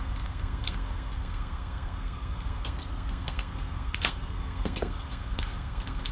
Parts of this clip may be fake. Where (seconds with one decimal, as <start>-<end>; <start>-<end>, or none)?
0.0-6.1